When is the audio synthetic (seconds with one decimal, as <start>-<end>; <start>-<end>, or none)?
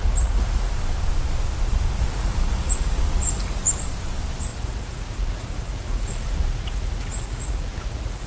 0.0-0.7; 2.0-3.8; 4.5-8.3